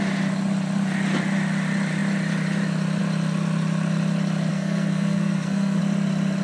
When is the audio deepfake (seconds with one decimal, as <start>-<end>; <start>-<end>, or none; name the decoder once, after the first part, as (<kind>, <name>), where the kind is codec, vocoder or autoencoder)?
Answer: 4.5-5.8 (codec, SNAC)